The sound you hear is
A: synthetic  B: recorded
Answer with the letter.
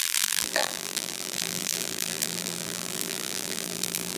A